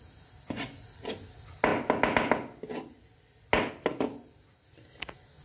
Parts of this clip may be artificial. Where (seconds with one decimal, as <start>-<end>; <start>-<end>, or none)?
none